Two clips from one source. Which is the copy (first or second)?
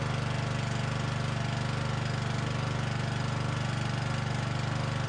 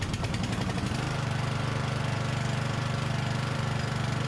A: second